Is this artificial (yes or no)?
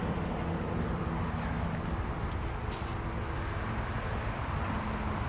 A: no